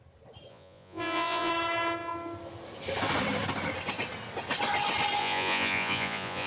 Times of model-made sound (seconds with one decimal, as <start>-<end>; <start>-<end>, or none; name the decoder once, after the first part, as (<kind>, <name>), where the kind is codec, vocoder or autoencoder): 0.5-1.5 (vocoder, Vocos); 5.2-6.5